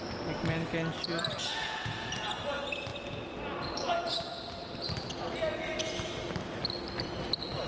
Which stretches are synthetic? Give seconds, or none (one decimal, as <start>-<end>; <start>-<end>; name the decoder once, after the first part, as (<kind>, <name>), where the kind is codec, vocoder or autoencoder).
1.4-2.3 (vocoder, Vocos)